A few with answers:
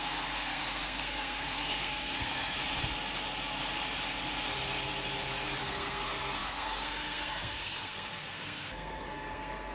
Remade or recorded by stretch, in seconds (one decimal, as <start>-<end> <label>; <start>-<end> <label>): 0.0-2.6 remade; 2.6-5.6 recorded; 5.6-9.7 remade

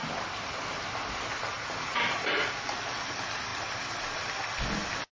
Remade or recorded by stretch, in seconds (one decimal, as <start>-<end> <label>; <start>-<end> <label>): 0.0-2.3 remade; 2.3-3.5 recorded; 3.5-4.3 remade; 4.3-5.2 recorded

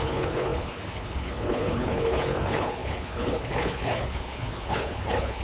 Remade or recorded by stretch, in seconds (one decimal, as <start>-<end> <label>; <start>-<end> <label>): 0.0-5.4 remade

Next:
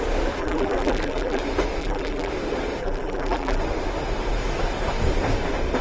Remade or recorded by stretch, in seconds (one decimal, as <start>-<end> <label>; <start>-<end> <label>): 0.0-0.4 recorded; 0.4-1.4 remade; 1.4-1.8 recorded; 1.8-2.3 remade; 2.3-2.8 recorded; 2.8-3.6 remade; 3.6-5.8 recorded

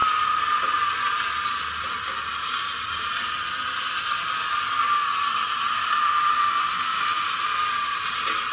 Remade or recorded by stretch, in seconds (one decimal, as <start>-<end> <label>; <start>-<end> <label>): 0.0-8.5 recorded

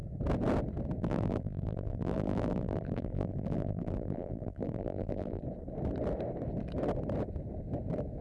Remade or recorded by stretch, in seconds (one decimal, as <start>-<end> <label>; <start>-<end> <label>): 0.0-1.0 recorded; 1.0-5.4 remade; 5.4-8.2 recorded

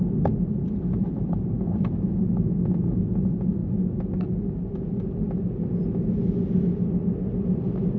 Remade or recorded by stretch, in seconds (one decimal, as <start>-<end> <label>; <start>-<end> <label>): 0.0-8.0 recorded